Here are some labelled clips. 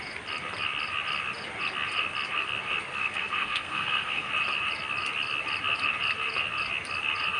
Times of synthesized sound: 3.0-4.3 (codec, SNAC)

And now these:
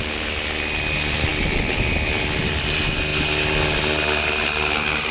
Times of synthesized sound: none